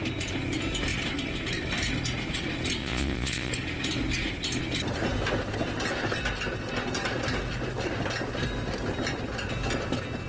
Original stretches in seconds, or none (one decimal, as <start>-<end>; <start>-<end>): 0.0-2.8; 3.5-10.3